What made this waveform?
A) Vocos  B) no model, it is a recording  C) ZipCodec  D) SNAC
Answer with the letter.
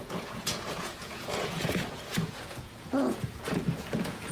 A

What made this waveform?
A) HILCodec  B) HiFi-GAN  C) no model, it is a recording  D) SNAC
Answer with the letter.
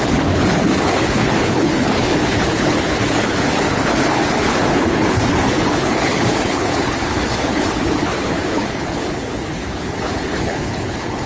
A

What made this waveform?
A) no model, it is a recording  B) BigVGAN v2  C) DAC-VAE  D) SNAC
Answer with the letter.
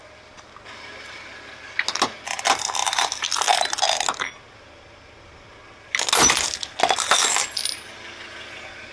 A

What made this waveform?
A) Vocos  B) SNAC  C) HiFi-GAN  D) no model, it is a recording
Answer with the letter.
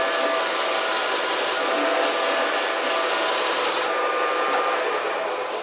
D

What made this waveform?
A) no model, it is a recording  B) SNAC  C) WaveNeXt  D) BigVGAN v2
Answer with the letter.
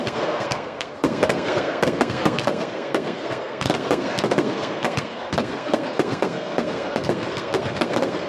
B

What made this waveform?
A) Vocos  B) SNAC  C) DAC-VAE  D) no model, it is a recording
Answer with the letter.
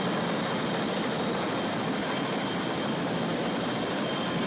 D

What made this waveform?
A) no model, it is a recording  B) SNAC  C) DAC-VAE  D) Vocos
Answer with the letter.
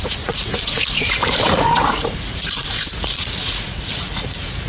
D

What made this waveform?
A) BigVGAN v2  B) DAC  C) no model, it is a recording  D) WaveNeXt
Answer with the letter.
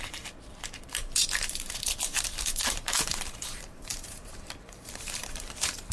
A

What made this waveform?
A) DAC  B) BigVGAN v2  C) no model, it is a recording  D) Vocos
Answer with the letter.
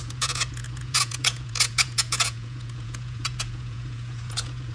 D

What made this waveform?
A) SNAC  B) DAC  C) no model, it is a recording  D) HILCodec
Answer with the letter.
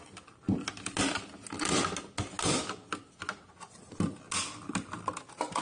C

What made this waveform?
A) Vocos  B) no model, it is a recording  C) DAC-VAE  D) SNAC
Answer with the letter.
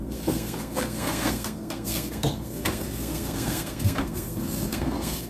D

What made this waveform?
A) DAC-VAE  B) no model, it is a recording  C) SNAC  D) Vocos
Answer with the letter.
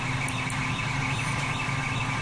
B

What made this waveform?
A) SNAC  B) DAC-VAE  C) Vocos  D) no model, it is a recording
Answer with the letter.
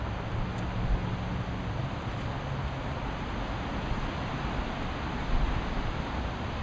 D